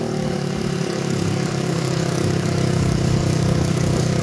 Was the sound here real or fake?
fake